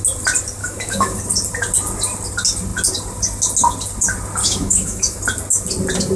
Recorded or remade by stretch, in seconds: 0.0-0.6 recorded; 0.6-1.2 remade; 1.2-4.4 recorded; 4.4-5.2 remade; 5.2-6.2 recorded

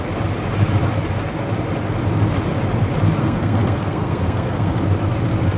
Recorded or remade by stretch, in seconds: 0.0-3.2 recorded; 3.2-4.8 remade; 4.8-5.6 recorded

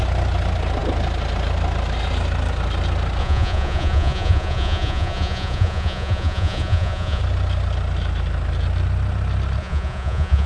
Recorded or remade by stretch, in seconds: 0.0-3.2 recorded; 3.2-7.2 remade; 7.2-9.6 recorded; 9.6-10.5 remade